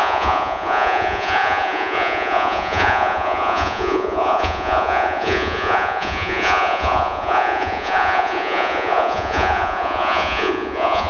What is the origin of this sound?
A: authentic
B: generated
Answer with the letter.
B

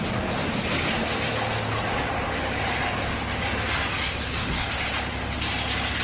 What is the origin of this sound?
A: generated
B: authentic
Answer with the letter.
B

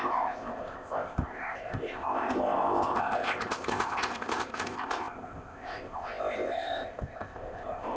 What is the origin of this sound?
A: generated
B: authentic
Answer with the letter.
A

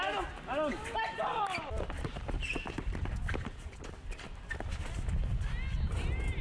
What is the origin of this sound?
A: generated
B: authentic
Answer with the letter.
A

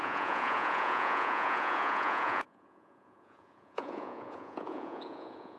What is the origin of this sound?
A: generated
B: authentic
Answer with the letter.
A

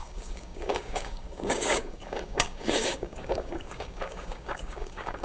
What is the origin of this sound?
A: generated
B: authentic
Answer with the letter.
A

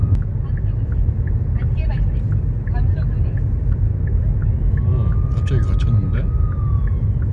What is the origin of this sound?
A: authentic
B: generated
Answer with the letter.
A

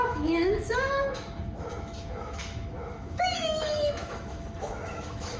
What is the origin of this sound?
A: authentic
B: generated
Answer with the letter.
B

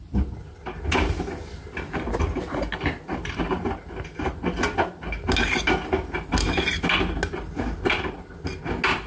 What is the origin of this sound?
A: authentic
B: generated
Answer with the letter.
A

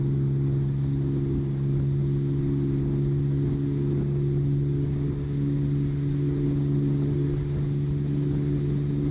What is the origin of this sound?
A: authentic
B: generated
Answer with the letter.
A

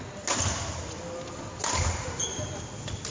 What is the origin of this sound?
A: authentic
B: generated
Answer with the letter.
A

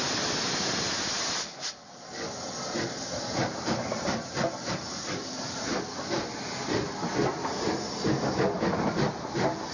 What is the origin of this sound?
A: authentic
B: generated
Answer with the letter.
A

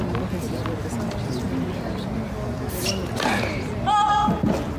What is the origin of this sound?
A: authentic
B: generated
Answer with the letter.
A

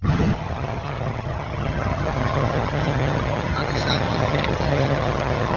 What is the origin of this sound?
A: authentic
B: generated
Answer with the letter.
B